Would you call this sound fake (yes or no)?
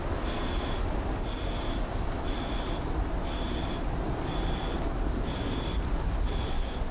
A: no